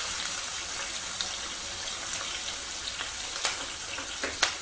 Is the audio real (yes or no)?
yes